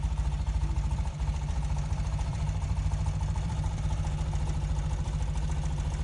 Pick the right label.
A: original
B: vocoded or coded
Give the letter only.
B